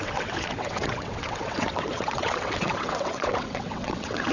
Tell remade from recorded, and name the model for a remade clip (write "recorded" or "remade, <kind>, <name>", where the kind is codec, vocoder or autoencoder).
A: remade, vocoder, WaveNeXt